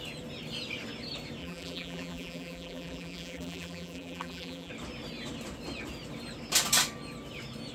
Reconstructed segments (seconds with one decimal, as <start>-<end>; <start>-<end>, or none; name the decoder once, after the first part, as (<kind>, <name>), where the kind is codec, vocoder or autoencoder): 1.4-4.7 (vocoder, BigVGAN v2)